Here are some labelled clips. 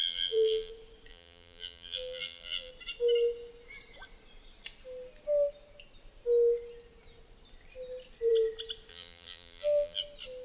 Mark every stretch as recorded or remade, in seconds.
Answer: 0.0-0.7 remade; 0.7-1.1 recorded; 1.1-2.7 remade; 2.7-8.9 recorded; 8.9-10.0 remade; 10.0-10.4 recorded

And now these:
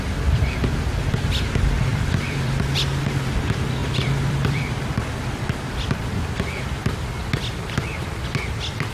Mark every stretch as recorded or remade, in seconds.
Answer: 0.0-1.9 recorded; 1.9-2.8 remade; 2.8-3.8 recorded; 3.8-7.1 remade; 7.1-8.9 recorded